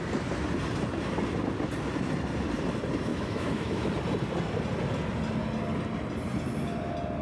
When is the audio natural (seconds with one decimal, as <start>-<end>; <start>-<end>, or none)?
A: 0.0-3.1; 3.9-7.2